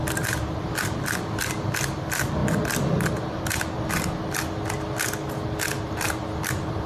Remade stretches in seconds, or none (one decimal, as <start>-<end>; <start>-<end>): 0.0-2.4; 6.5-6.9